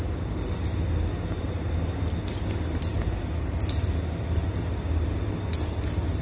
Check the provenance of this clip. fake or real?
real